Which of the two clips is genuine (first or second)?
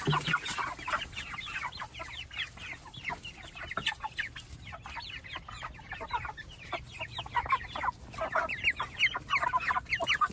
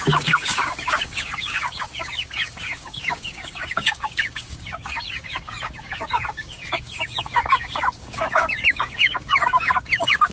first